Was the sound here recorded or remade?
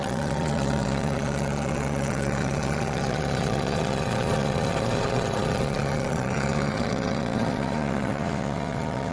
remade